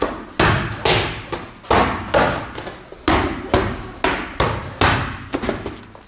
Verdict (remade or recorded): recorded